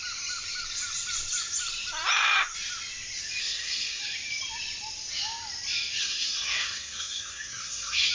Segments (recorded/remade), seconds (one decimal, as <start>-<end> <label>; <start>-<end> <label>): 0.0-3.4 recorded; 3.4-4.0 remade; 4.0-6.0 recorded; 6.0-8.1 remade